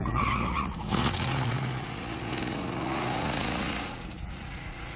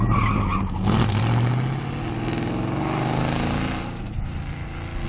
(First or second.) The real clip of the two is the second